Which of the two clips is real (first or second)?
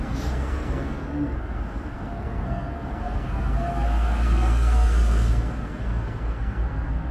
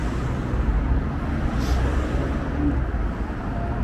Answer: second